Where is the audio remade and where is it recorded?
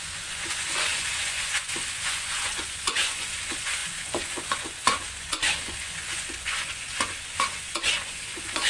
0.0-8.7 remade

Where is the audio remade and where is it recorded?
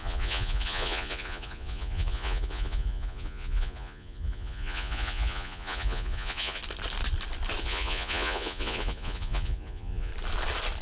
0.0-6.6 remade; 6.6-7.6 recorded; 7.6-10.1 remade; 10.1-10.8 recorded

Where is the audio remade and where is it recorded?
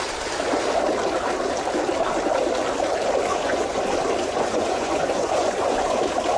0.0-3.3 recorded; 3.3-3.8 remade; 3.8-4.2 recorded; 4.2-6.0 remade; 6.0-6.4 recorded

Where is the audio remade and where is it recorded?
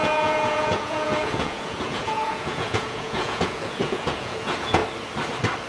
0.0-4.8 remade; 4.8-5.7 recorded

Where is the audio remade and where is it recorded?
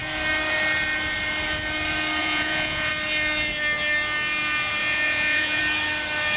0.0-2.2 recorded; 2.2-2.9 remade; 2.9-4.8 recorded; 4.8-5.6 remade; 5.6-6.4 recorded